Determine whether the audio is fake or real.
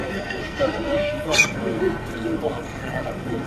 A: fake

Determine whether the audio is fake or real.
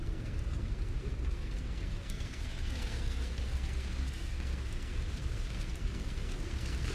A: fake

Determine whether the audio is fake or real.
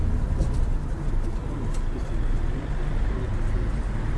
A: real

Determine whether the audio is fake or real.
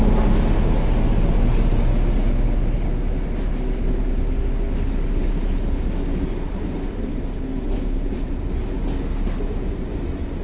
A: real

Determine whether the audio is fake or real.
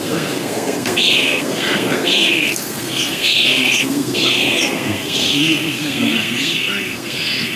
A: fake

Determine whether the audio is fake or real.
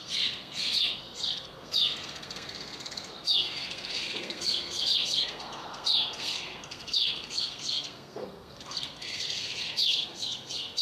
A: fake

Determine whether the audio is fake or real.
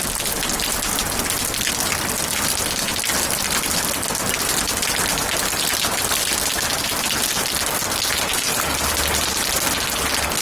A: real